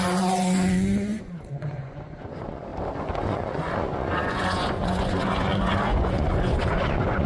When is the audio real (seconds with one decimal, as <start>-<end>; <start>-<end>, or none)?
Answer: 2.7-3.2